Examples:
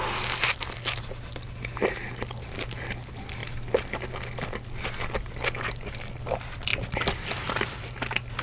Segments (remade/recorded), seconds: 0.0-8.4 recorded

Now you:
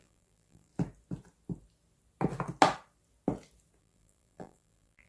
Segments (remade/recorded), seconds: 0.0-0.7 remade; 0.7-3.8 recorded; 3.8-5.1 remade

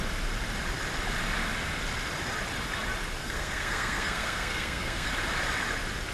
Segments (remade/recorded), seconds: 0.0-3.2 recorded; 3.2-5.1 remade; 5.1-6.1 recorded